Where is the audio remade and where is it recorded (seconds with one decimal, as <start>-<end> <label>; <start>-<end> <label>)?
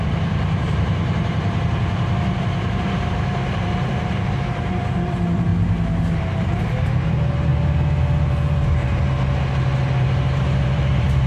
0.0-5.5 remade; 5.5-6.4 recorded; 6.4-7.5 remade; 7.5-10.0 recorded; 10.0-11.3 remade